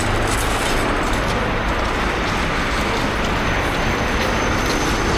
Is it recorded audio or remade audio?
recorded